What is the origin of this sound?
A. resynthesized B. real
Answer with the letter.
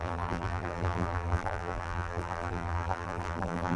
A